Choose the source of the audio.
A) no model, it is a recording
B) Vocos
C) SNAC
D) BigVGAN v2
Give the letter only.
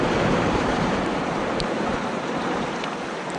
D